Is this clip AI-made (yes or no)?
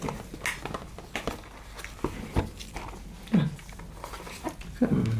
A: no